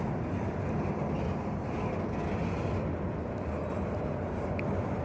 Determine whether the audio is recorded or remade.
recorded